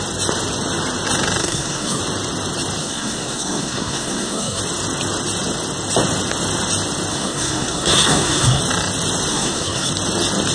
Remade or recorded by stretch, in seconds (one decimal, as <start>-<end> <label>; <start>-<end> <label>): 0.0-1.4 recorded; 1.4-2.0 remade; 2.0-2.8 recorded; 2.8-4.6 remade; 4.6-7.1 recorded; 7.1-8.6 remade; 8.6-9.3 recorded; 9.3-9.9 remade; 9.9-10.5 recorded

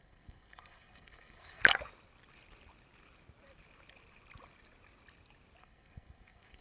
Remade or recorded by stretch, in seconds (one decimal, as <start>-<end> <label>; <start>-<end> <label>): 0.0-1.6 remade; 1.6-5.6 recorded; 5.6-6.6 remade

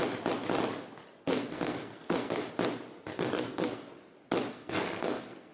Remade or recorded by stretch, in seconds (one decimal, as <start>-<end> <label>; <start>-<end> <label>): 0.0-1.2 recorded; 1.2-2.5 remade; 2.5-3.0 recorded; 3.0-3.9 remade; 3.9-4.5 recorded; 4.5-5.5 remade

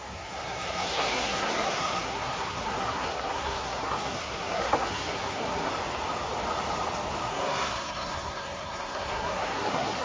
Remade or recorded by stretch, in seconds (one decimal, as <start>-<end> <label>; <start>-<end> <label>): 0.0-5.7 remade; 5.7-7.3 recorded; 7.3-10.0 remade

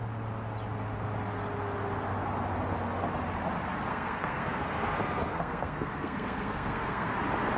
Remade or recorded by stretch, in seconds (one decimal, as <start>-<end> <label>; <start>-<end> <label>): 0.0-3.9 recorded; 3.9-7.1 remade; 7.1-7.6 recorded

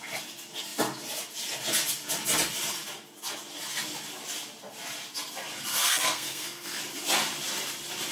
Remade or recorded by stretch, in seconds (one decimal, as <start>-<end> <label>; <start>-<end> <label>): 0.0-5.7 recorded; 5.7-6.8 remade; 6.8-8.1 recorded

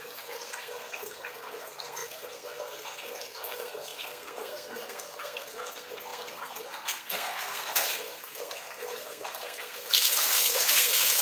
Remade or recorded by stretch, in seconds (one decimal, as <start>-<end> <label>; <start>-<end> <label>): 0.0-11.2 remade

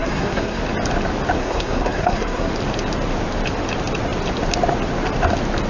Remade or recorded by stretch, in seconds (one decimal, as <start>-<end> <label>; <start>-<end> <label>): 0.0-0.6 remade; 0.6-1.4 recorded; 1.4-2.5 remade; 2.5-5.7 recorded